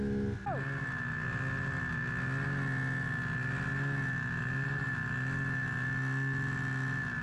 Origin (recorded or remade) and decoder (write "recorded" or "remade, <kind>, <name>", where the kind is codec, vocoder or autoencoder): recorded